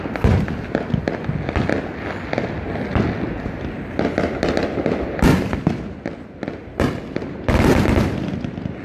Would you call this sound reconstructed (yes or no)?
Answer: no